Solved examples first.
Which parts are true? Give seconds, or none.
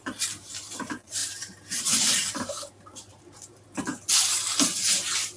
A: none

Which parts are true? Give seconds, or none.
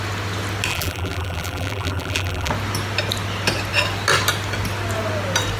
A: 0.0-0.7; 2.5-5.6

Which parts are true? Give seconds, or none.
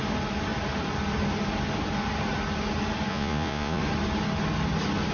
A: 0.0-3.1; 3.8-5.1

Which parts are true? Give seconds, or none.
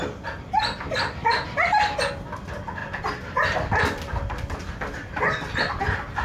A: 0.0-1.2; 2.1-5.4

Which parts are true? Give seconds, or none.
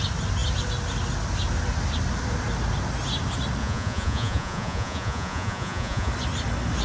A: 0.0-3.6; 6.1-6.8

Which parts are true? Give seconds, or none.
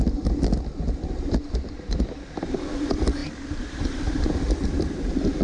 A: 0.0-3.2; 5.0-5.4